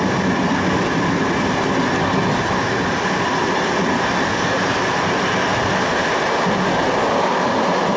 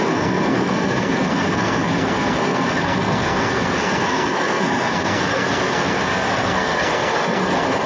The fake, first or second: second